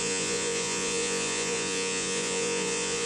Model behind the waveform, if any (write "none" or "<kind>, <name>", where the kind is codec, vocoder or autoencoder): vocoder, Vocos